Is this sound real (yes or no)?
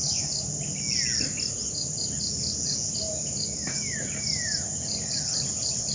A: yes